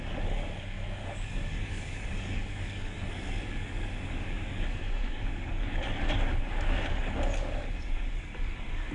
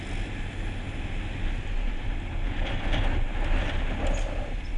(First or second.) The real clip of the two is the second